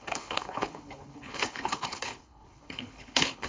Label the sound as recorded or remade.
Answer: remade